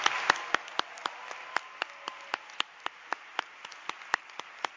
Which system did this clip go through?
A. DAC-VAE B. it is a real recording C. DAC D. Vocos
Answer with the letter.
B